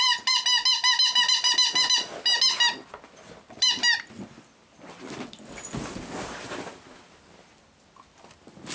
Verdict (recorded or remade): recorded